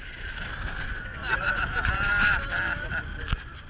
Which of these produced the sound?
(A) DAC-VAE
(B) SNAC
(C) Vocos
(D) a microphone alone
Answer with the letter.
D